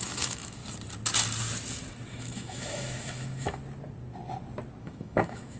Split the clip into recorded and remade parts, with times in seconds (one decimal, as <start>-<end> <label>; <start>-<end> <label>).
0.0-0.6 remade; 0.6-2.1 recorded; 2.1-3.6 remade; 3.6-4.8 recorded; 4.8-5.6 remade